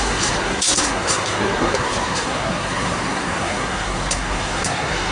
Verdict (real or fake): fake